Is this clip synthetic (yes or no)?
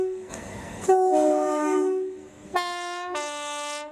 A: yes